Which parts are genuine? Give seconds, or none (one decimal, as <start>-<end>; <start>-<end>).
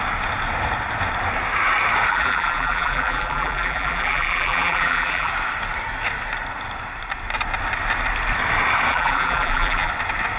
0.0-2.1; 5.3-8.9; 9.9-10.4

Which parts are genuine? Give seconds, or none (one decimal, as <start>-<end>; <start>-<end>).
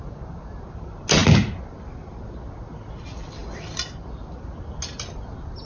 0.0-5.6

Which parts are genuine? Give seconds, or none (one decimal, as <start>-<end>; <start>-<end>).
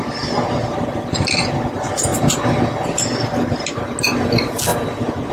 0.0-5.3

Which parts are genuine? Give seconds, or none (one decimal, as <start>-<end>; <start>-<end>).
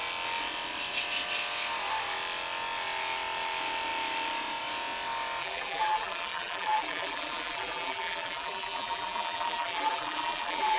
0.0-5.4